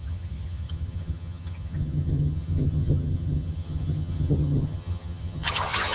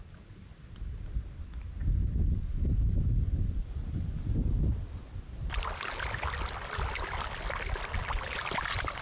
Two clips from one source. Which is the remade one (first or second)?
first